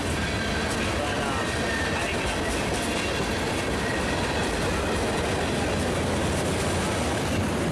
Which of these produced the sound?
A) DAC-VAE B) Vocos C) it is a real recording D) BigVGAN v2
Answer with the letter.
C